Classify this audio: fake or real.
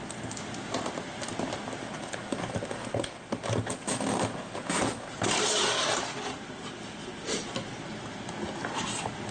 real